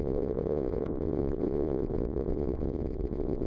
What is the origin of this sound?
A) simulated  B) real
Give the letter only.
A